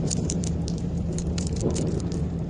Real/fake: fake